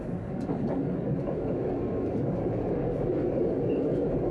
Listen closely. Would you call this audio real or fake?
fake